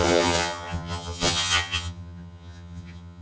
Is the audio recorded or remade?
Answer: remade